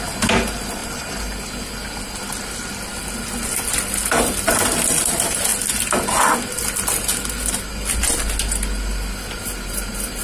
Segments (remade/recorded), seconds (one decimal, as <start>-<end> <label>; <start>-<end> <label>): 0.0-10.2 recorded